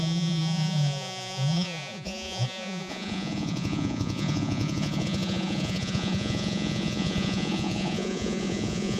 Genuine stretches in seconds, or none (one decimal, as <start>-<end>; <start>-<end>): none